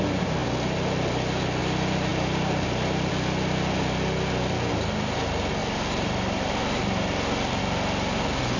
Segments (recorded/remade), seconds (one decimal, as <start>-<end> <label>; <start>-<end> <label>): 0.0-2.1 recorded; 2.1-3.1 remade; 3.1-5.6 recorded; 5.6-7.6 remade; 7.6-8.6 recorded